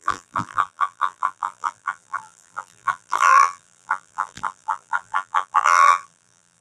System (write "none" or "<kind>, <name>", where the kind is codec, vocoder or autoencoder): vocoder, BigVGAN v2